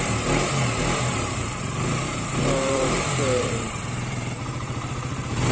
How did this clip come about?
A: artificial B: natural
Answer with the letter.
A